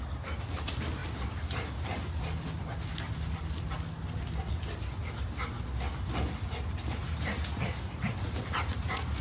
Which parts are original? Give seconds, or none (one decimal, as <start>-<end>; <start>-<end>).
0.0-9.2